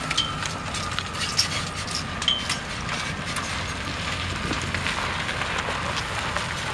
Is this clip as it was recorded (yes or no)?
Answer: yes